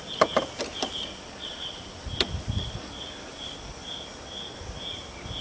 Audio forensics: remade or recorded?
recorded